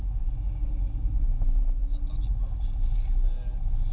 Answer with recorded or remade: recorded